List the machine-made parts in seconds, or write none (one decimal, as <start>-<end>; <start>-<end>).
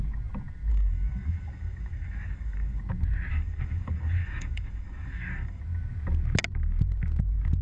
0.7-2.8; 3.3-5.6